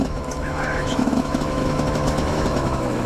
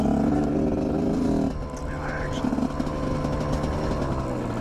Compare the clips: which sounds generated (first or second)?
first